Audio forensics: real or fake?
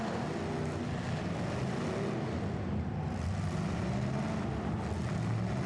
real